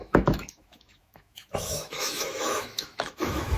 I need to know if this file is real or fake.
fake